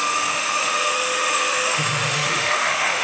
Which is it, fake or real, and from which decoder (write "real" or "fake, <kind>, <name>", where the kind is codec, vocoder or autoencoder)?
fake, autoencoder, DAC-VAE